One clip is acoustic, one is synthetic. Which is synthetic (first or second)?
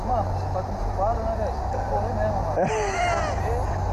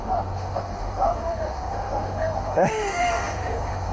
second